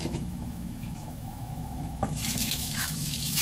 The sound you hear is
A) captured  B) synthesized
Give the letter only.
B